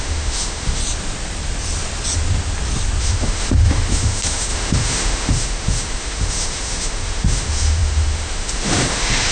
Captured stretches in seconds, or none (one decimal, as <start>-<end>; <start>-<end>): 0.8-3.0